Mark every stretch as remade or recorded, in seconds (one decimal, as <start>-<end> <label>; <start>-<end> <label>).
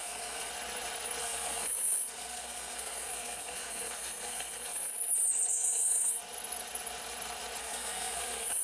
0.0-0.5 remade; 0.5-1.2 recorded; 1.2-4.9 remade; 4.9-5.5 recorded; 5.5-6.2 remade; 6.2-7.6 recorded; 7.6-8.6 remade